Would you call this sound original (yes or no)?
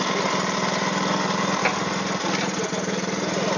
yes